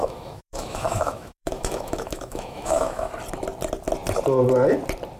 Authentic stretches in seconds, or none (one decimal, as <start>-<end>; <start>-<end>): 3.1-5.2